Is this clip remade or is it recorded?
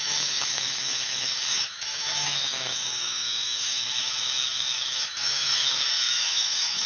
remade